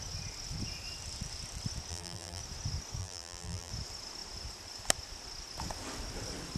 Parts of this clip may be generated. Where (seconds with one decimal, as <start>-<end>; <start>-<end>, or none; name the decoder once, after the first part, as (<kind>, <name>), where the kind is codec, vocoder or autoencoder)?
1.9-2.4 (vocoder, BigVGAN v2); 3.0-3.7